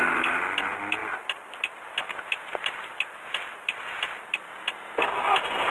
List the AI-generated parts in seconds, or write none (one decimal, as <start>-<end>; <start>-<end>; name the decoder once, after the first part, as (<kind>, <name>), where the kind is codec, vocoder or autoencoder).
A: none